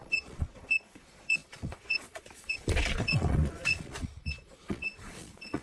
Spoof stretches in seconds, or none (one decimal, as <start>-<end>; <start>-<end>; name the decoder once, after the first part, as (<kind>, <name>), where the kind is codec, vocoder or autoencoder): 0.0-5.6 (vocoder, Vocos)